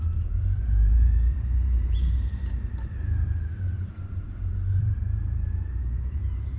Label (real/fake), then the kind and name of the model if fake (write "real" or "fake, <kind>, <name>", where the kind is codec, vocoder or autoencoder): fake, vocoder, BigVGAN v2